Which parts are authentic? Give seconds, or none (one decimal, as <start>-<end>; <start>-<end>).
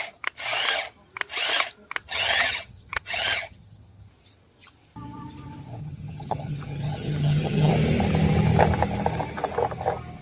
0.0-2.0; 4.1-5.8; 7.7-10.2